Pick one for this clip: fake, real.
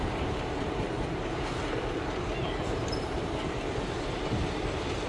fake